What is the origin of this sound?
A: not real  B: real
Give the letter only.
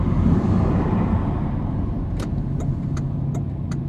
A